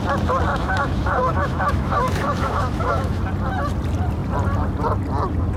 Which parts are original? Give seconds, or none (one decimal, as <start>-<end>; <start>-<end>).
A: 0.0-0.5; 3.2-5.6